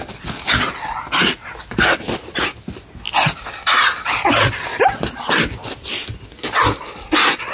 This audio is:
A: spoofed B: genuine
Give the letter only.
B